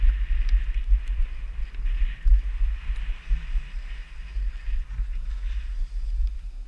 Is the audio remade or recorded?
recorded